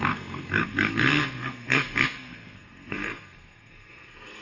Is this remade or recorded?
remade